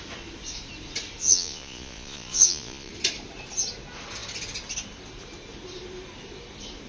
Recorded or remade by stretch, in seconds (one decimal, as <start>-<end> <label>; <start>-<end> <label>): 0.0-1.2 recorded; 1.2-2.9 remade; 2.9-6.9 recorded